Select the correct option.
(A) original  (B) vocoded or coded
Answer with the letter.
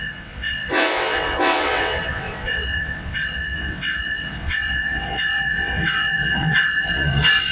B